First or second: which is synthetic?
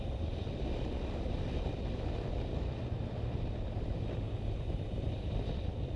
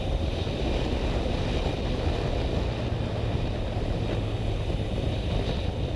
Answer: first